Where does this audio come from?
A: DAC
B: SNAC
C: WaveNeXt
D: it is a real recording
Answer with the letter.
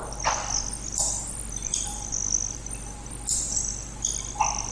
D